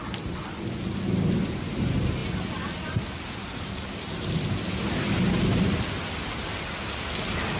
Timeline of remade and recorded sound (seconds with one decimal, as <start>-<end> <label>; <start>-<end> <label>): 0.0-7.6 recorded